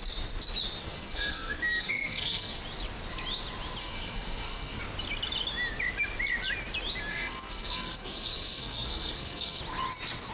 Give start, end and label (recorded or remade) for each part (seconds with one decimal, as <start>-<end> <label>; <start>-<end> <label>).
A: 0.0-0.8 recorded; 0.8-2.6 remade; 2.6-3.8 recorded; 3.8-4.8 remade; 4.8-7.1 recorded; 7.1-9.6 remade; 9.6-10.3 recorded

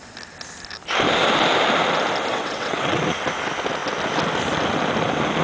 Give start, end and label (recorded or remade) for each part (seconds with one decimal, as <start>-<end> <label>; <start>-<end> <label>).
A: 0.0-2.3 recorded; 2.3-3.0 remade; 3.0-5.4 recorded

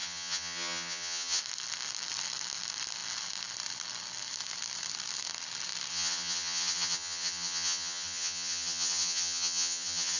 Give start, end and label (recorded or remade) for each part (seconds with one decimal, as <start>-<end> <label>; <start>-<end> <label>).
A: 0.0-1.4 remade; 1.4-5.9 recorded; 5.9-10.2 remade

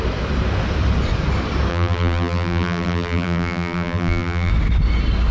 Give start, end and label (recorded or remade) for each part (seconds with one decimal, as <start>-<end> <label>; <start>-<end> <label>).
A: 0.0-1.7 recorded; 1.7-4.5 remade; 4.5-5.3 recorded

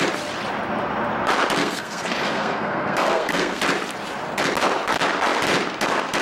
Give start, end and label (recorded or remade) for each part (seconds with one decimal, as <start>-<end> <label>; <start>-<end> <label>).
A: 0.0-1.6 recorded; 1.6-3.6 remade; 3.6-6.2 recorded